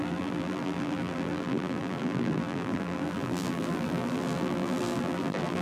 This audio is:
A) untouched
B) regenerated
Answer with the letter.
B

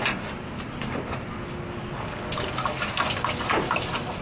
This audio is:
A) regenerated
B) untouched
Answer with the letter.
B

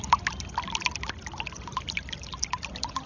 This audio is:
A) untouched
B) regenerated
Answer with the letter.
A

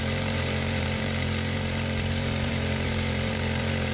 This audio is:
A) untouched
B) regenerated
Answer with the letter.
B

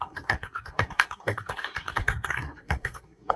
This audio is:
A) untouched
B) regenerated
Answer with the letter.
B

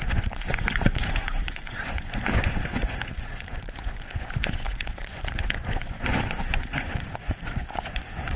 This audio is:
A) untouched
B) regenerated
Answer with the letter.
B